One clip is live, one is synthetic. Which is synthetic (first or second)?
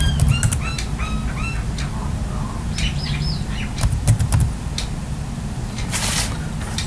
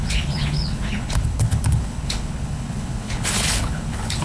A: second